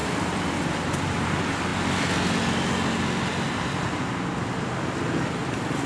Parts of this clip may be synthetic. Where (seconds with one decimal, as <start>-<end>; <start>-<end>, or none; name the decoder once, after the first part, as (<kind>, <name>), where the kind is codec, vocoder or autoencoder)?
none